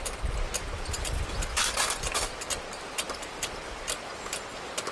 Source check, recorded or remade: remade